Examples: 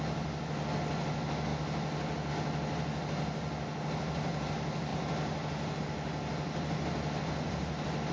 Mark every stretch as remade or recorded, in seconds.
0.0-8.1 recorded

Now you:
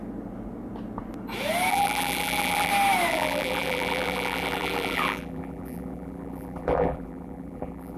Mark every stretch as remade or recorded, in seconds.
0.0-1.7 recorded; 1.7-2.7 remade; 2.7-3.1 recorded; 3.1-8.0 remade